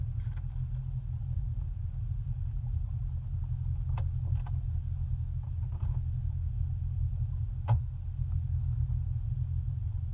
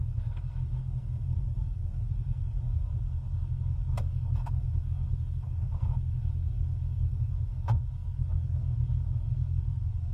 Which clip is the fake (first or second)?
second